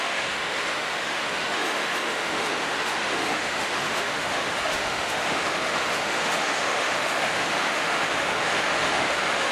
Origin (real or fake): fake